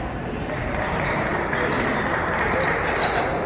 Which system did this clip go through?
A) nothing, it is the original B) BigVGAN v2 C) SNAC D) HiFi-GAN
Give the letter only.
A